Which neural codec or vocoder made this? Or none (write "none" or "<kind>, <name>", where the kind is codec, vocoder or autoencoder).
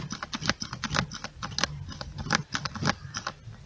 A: none